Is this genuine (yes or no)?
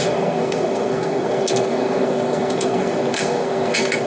no